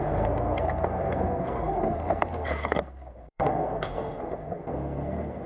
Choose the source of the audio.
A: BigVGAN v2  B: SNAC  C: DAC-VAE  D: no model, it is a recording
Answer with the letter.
B